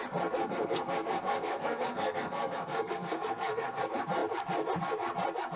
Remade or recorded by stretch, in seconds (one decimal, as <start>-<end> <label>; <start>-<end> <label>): 0.0-0.4 recorded; 0.4-3.8 remade; 3.8-5.6 recorded